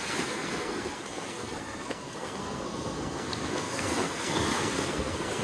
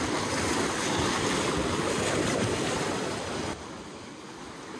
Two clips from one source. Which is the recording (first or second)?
second